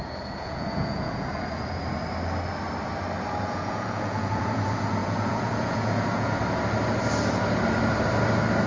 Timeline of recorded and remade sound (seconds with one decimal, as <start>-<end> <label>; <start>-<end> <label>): 0.0-1.8 remade; 1.8-3.4 recorded; 3.4-6.4 remade; 6.4-8.7 recorded